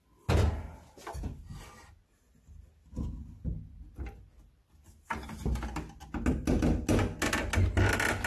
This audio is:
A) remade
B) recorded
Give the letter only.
B